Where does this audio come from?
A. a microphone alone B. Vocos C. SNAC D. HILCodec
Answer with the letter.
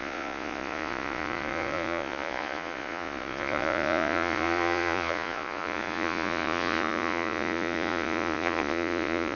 B